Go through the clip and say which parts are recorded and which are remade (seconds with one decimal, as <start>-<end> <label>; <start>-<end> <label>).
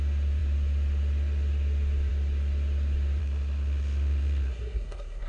0.0-3.2 recorded; 3.2-5.3 remade